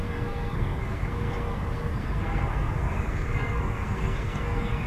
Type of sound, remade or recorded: remade